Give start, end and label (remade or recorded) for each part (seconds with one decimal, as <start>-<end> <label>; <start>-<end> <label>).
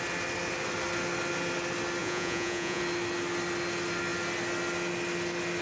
0.0-2.0 recorded; 2.0-2.8 remade; 2.8-5.6 recorded